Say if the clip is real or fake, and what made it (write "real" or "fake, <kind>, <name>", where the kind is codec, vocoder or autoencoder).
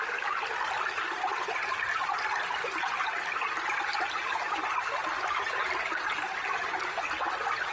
real